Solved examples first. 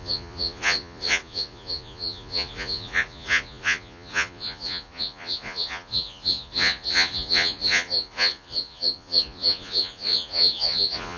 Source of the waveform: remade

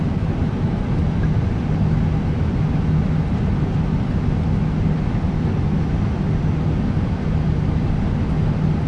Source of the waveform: recorded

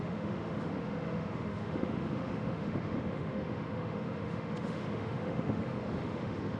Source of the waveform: remade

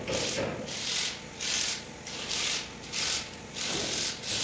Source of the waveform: recorded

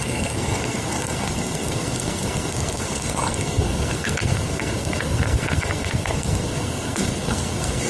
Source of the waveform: remade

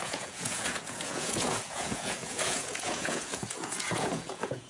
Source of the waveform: remade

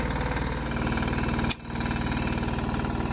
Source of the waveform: recorded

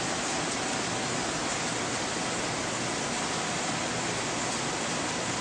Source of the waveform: recorded